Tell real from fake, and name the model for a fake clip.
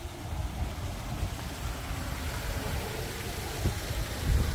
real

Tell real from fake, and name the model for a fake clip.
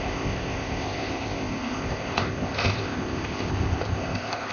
fake, codec, ZipCodec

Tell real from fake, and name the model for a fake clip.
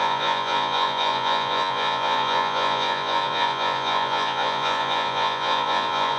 fake, vocoder, Vocos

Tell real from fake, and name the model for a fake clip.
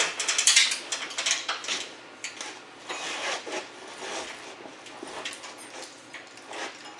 real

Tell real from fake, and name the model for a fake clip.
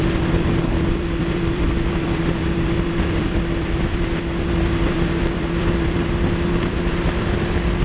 fake, vocoder, BigVGAN v2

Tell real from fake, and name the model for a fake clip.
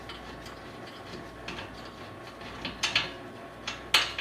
real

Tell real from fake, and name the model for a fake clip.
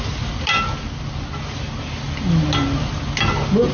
real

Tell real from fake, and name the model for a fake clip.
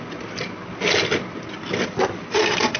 real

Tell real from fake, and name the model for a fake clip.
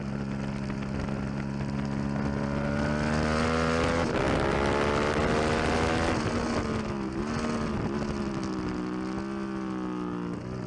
real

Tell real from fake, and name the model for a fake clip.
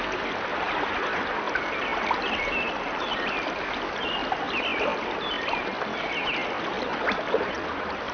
real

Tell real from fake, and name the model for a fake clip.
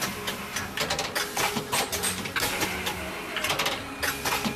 real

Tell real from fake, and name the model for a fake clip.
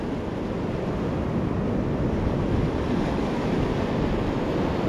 real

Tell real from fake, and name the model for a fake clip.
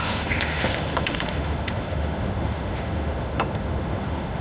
fake, autoencoder, DAC-VAE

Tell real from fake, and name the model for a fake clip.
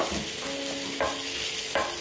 real